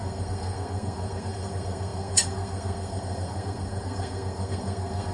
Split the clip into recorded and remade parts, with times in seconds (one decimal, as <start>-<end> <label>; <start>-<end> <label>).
0.0-5.1 remade